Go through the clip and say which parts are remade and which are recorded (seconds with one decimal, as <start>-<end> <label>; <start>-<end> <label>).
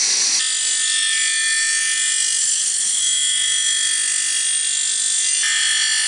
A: 0.0-2.4 recorded; 2.4-3.0 remade; 3.0-6.1 recorded